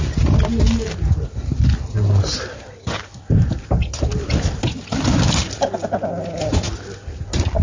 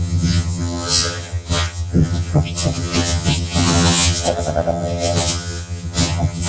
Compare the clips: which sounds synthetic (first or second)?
second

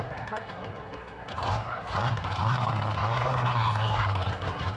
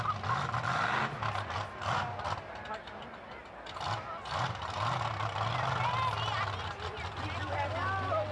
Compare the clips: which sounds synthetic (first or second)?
first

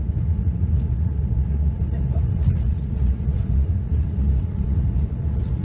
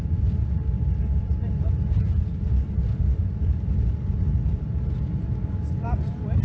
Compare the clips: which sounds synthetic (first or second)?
first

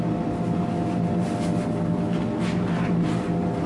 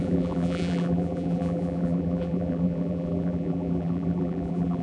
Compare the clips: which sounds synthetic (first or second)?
second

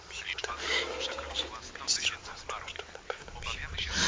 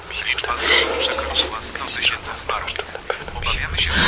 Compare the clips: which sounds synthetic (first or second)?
first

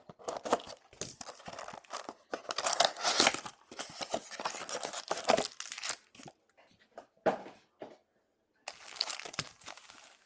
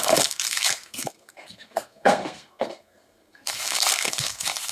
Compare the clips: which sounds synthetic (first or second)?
second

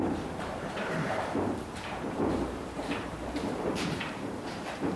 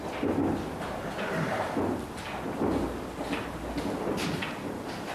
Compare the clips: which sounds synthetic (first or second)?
first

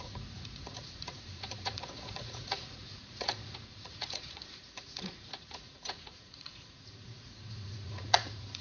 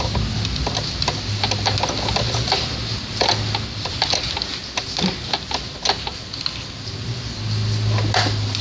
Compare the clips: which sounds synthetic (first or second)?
first